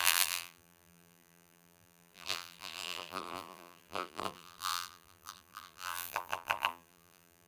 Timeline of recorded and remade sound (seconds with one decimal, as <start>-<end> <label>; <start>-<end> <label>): 0.0-7.5 remade